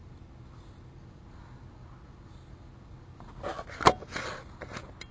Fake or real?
real